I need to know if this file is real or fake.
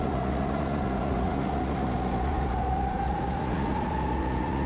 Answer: fake